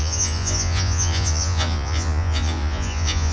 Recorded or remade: remade